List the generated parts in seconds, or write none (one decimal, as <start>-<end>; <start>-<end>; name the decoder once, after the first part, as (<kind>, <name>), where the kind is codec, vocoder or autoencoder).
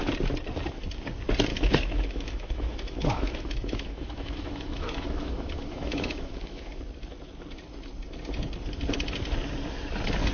1.5-6.8 (autoencoder, DAC-VAE)